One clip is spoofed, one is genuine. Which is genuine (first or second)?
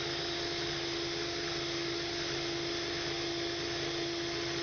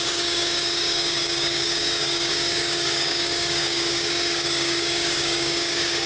first